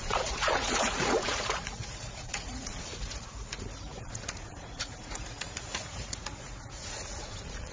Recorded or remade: remade